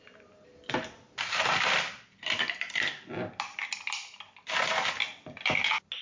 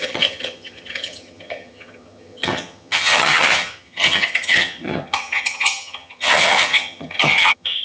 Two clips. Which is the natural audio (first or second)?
first